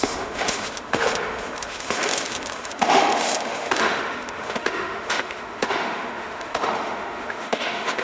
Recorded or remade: remade